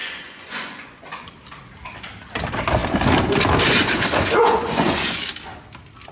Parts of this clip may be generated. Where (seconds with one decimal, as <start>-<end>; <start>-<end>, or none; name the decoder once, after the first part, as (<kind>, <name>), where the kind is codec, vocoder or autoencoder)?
0.0-1.3 (vocoder, Vocos); 4.4-5.2